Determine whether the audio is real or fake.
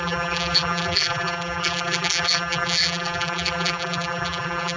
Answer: fake